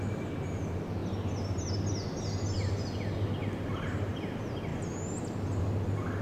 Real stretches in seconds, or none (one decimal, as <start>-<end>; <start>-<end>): 0.0-3.4; 4.2-6.2